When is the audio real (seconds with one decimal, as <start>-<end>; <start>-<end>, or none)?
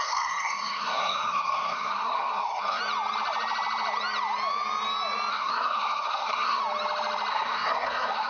2.8-5.3; 6.6-7.3